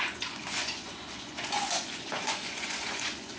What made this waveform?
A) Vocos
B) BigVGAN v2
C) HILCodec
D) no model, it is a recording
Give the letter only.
A